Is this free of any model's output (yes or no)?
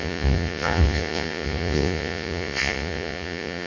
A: no